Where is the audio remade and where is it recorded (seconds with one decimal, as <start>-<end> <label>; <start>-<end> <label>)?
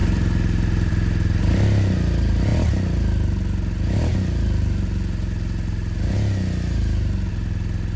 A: 0.0-0.9 remade; 0.9-8.0 recorded